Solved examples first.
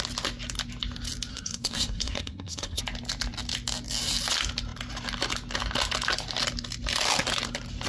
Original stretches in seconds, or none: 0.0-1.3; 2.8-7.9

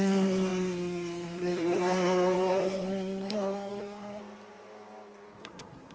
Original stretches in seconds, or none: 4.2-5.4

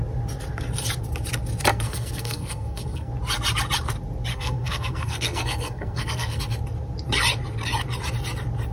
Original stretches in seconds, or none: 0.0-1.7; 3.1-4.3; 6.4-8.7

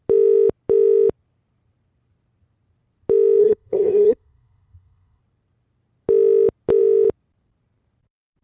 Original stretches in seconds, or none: 0.0-3.4; 5.2-8.4